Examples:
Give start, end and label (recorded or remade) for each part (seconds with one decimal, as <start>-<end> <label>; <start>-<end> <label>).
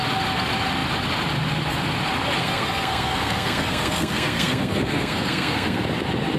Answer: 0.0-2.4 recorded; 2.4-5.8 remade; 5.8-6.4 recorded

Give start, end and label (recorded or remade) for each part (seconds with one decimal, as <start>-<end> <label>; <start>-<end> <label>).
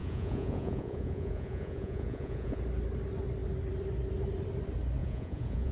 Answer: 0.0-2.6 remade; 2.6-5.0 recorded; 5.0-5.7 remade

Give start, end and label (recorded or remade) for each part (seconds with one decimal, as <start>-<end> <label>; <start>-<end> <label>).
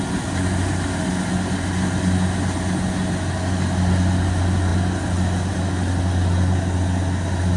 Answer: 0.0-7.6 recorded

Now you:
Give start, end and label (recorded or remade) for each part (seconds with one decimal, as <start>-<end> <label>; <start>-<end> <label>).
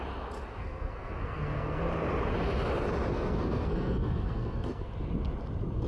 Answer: 0.0-0.5 recorded; 0.5-1.8 remade; 1.8-3.1 recorded; 3.1-4.9 remade; 4.9-5.9 recorded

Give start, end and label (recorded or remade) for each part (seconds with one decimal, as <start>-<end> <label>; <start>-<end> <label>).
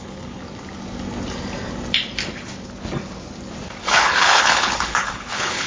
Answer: 0.0-0.4 remade; 0.4-3.8 recorded; 3.8-5.7 remade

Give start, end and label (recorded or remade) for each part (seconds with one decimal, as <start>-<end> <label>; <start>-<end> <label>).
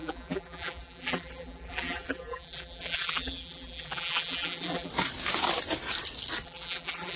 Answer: 0.0-4.9 remade; 4.9-6.4 recorded; 6.4-7.2 remade